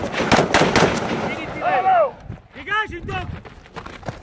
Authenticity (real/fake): real